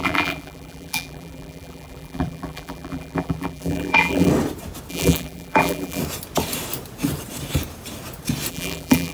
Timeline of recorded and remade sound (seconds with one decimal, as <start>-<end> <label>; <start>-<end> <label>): 0.0-4.3 remade; 4.3-4.9 recorded; 4.9-6.0 remade; 6.0-8.5 recorded; 8.5-9.1 remade